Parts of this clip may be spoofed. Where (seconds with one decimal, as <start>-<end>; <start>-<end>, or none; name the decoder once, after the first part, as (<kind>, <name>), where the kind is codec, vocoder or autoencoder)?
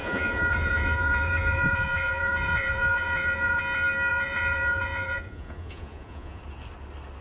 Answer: 0.0-3.6 (vocoder, Vocos); 4.1-6.4